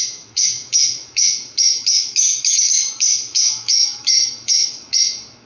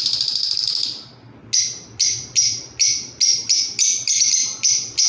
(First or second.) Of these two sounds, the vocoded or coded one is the first